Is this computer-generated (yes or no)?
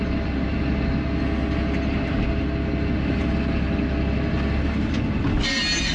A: no